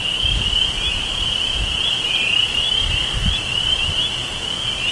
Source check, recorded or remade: recorded